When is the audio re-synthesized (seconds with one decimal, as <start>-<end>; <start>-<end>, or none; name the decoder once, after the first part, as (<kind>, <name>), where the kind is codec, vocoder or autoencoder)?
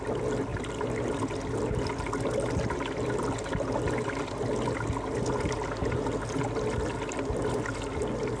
none